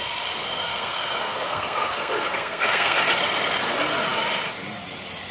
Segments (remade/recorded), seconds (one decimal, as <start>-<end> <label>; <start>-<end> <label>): 0.0-0.4 recorded; 0.4-3.0 remade; 3.0-5.3 recorded